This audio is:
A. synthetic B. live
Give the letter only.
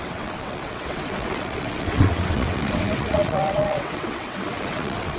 A